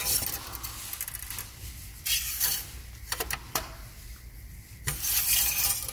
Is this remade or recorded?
recorded